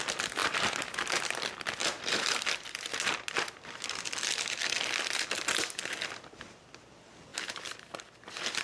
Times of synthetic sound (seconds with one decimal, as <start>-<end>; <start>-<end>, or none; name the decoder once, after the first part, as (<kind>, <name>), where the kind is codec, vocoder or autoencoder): 0.4-1.2 (vocoder, BigVGAN v2); 1.8-2.4; 7.3-7.9